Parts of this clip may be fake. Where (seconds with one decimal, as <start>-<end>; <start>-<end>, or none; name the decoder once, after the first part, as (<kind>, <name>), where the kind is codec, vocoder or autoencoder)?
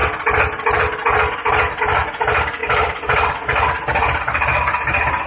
none